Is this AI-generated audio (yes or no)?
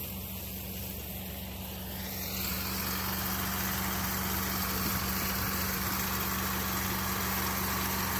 no